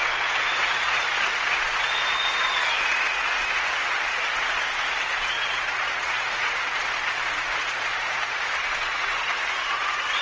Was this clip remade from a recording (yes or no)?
yes